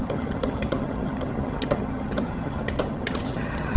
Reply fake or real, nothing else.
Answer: fake